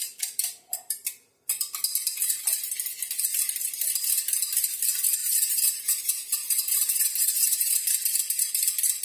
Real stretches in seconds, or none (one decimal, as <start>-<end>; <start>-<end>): 0.0-5.2; 7.9-9.0